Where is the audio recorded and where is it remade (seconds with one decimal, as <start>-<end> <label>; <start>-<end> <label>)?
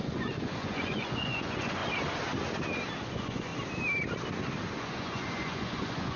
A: 0.0-1.8 remade; 1.8-3.0 recorded; 3.0-3.5 remade; 3.5-4.8 recorded; 4.8-6.2 remade